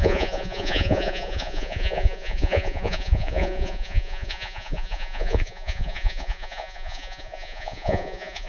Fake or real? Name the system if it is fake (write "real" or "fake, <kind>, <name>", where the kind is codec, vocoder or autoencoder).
fake, vocoder, Vocos